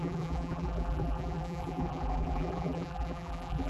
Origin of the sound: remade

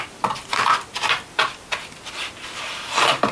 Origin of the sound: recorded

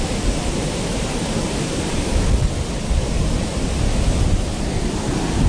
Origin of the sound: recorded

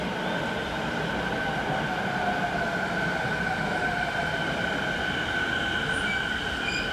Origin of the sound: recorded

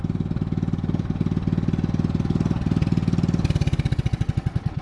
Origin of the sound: recorded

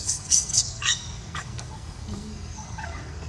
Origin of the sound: remade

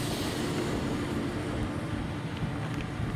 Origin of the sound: recorded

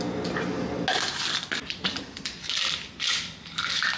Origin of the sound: recorded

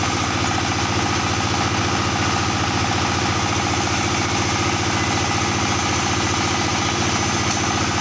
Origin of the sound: recorded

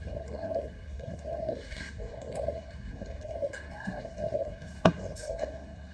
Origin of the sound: remade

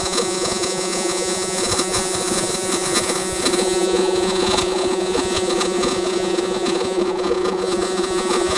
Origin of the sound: remade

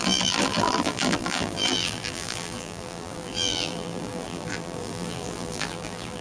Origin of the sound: remade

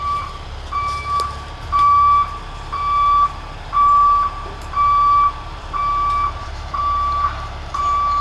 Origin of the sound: remade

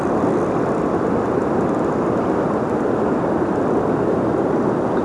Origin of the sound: recorded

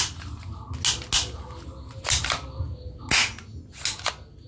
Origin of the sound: recorded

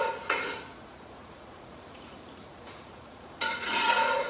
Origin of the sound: remade